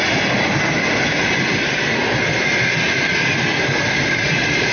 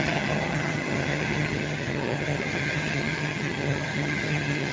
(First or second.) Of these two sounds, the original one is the first